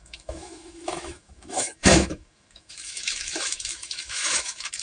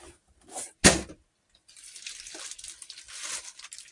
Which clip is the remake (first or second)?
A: first